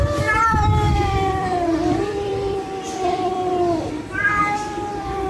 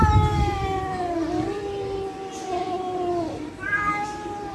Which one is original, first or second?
second